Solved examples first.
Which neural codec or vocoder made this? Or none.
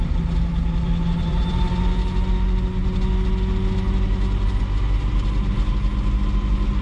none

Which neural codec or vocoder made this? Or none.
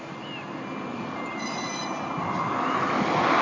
none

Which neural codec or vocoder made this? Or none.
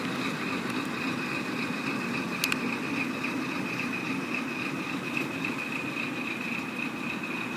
none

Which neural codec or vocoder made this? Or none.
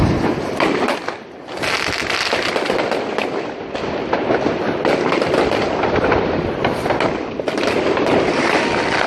none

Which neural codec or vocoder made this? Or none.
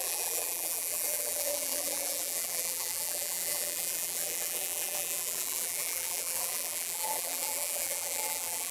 vocoder, BigVGAN v2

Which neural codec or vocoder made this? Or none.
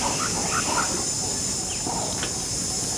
none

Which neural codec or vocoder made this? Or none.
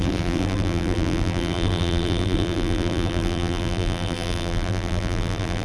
vocoder, BigVGAN v2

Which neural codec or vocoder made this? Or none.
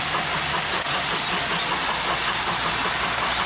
none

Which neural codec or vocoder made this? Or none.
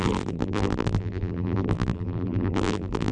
vocoder, BigVGAN v2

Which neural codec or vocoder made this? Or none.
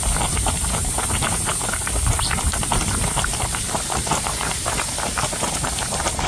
vocoder, BigVGAN v2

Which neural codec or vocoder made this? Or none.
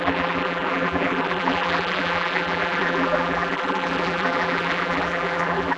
vocoder, BigVGAN v2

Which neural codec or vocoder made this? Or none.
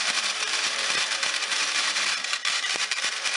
vocoder, BigVGAN v2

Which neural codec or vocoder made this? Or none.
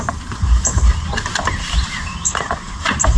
vocoder, BigVGAN v2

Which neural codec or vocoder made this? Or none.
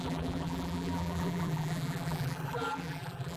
vocoder, BigVGAN v2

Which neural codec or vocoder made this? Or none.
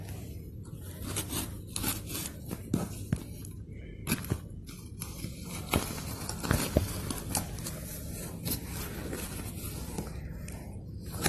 none